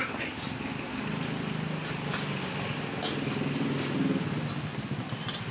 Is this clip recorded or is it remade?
recorded